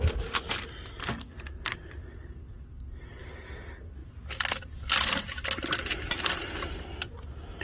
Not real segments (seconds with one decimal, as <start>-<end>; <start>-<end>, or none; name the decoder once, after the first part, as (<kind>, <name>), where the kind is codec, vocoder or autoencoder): none